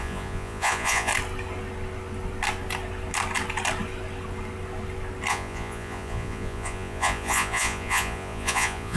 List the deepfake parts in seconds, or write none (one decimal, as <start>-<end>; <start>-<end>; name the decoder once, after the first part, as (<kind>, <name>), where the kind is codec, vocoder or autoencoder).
0.0-1.1 (vocoder, Vocos); 5.3-9.0